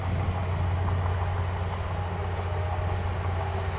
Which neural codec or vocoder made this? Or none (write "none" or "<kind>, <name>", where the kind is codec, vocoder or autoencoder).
none